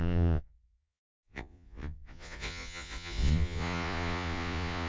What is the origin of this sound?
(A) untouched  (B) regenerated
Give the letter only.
B